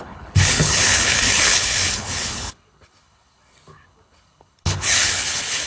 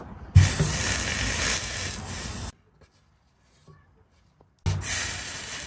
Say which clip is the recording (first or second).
second